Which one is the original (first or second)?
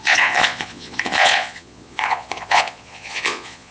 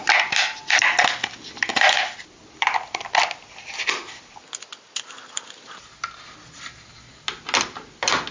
second